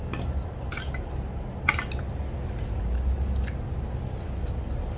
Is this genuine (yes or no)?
yes